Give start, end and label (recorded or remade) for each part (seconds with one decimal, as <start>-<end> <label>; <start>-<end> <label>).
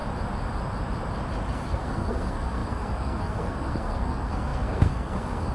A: 0.0-1.5 recorded; 1.5-5.5 remade